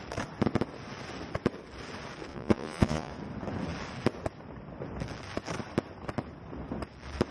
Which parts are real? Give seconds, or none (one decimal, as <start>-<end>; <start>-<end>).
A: 0.0-2.3; 3.1-7.3